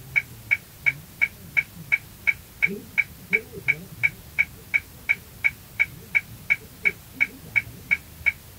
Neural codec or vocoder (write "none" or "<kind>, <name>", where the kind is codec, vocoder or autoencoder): none